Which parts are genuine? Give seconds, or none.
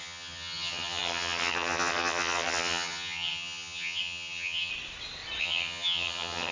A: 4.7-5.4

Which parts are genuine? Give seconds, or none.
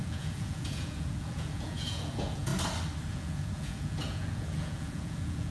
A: 2.5-3.1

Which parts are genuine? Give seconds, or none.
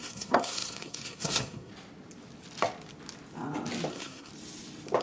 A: 1.7-3.9; 4.3-5.0